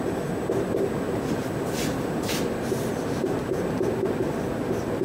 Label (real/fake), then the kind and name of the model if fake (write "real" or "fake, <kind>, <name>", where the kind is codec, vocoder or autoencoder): real